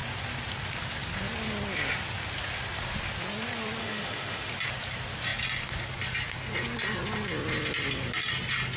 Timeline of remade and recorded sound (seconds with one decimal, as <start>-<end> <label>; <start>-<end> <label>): 0.0-3.8 recorded; 3.8-4.5 remade; 4.5-8.8 recorded